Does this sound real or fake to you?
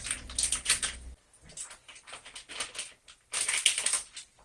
real